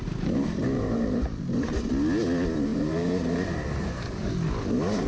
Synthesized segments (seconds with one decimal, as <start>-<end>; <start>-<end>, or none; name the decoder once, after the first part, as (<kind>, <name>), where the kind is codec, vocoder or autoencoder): 0.6-1.9 (vocoder, BigVGAN v2); 2.7-4.3